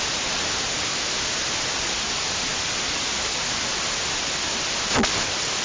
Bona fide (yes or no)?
yes